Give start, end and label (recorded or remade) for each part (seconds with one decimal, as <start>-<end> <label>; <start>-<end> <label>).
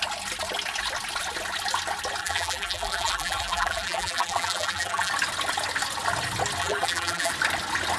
0.0-2.2 recorded; 2.2-5.1 remade; 5.1-6.6 recorded; 6.6-7.3 remade; 7.3-8.0 recorded